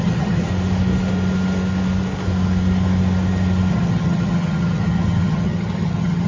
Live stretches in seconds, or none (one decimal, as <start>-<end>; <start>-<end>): 0.5-3.7